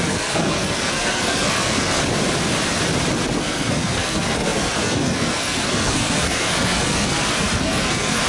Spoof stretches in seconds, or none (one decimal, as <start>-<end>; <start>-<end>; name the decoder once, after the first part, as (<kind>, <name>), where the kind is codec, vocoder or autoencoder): 0.0-2.0 (codec, SNAC); 3.4-8.3